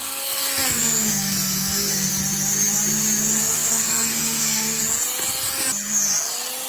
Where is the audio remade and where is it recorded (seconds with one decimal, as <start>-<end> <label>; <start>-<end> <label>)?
0.0-2.1 remade; 2.1-3.4 recorded; 3.4-4.8 remade; 4.8-6.7 recorded